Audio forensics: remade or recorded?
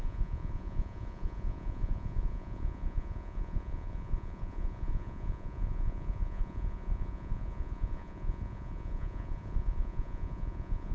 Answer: remade